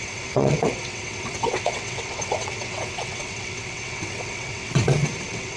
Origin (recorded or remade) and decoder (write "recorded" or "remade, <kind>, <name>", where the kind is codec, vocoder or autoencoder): remade, vocoder, WaveNeXt